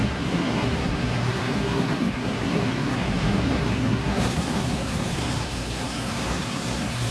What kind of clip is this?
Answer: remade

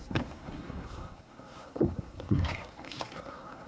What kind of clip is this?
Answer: remade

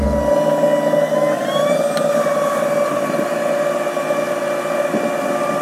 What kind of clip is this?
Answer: recorded